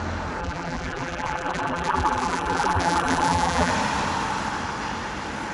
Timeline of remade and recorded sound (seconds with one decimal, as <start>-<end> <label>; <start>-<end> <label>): 0.0-0.4 recorded; 0.4-3.7 remade; 3.7-5.5 recorded